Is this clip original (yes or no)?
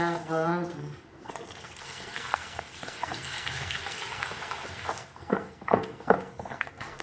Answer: no